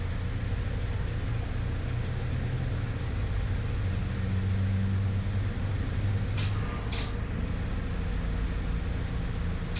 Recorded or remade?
recorded